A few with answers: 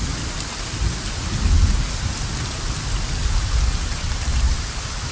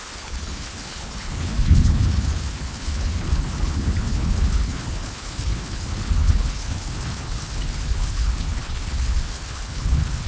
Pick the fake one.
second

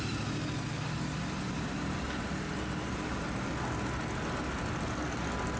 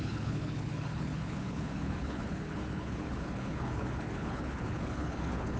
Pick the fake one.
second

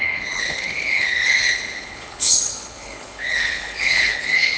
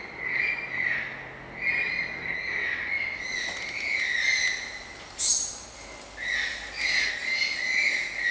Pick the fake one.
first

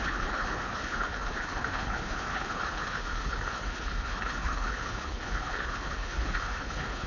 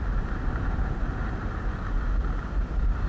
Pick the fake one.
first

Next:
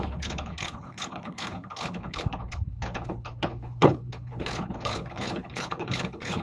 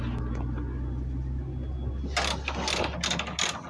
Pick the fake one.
first